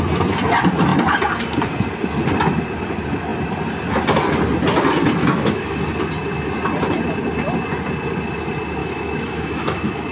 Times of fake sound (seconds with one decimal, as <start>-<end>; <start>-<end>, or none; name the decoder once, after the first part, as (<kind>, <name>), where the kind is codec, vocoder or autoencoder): 5.2-5.8 (autoencoder, DAC-VAE); 8.8-10.1